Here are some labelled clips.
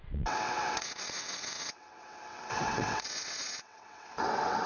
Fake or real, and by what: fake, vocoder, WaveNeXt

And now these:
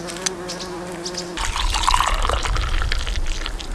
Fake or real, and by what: real